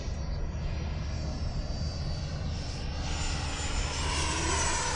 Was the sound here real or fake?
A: real